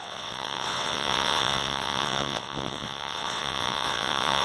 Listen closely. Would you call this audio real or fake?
fake